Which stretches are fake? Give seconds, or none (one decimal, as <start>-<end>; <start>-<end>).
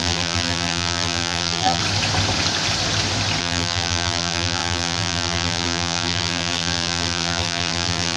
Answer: 0.0-1.8; 3.4-8.2